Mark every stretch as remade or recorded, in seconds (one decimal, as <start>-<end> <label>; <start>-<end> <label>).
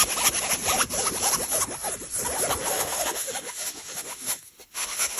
0.0-2.7 recorded; 2.7-5.2 remade